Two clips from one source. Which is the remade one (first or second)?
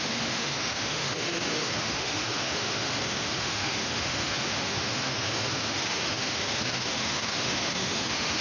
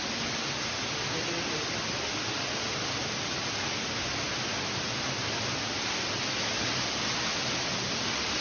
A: first